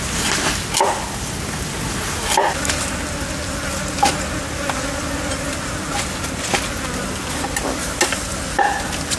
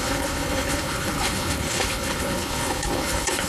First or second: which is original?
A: first